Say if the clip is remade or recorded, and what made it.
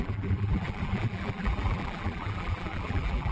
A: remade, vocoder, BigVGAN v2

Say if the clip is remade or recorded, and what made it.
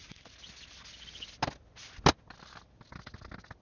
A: recorded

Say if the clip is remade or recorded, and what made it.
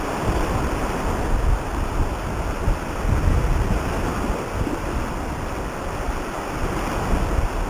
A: recorded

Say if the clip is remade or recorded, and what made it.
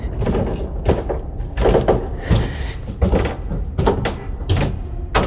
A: recorded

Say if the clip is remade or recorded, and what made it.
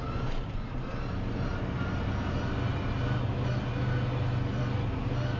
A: recorded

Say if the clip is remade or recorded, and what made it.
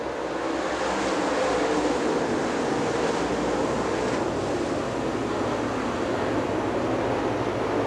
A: recorded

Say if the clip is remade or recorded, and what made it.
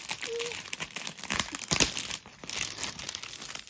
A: recorded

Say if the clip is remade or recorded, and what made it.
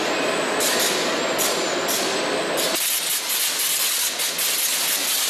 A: recorded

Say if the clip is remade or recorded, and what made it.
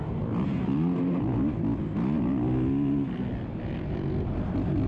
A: recorded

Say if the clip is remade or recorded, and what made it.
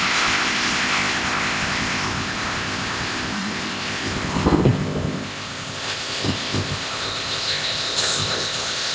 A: remade, codec, ZipCodec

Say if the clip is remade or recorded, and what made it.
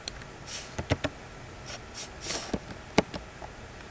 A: recorded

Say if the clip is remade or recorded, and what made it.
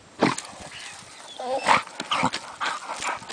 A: recorded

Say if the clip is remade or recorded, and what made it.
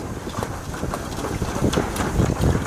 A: recorded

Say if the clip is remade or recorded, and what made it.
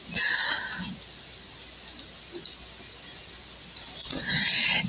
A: recorded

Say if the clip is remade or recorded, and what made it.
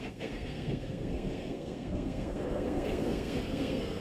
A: remade, codec, SNAC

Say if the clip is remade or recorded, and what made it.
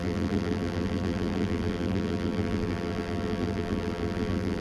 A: remade, vocoder, BigVGAN v2